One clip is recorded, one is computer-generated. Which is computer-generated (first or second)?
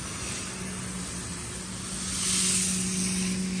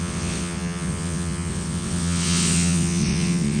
second